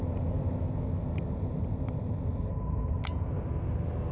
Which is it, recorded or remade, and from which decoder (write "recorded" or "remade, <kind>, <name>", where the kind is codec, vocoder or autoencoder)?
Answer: recorded